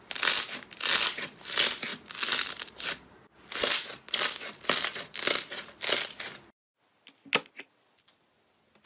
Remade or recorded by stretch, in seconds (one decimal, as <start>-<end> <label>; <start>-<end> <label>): 0.0-8.9 recorded